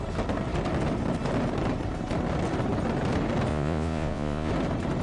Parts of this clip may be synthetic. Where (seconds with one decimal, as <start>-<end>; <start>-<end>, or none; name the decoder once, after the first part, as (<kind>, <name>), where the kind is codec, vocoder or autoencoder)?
3.5-4.5 (vocoder, Vocos)